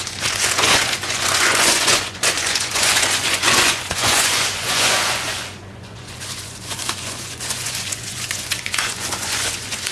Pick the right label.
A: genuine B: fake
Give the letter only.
B